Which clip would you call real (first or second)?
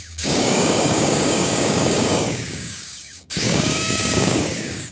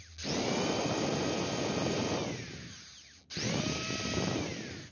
second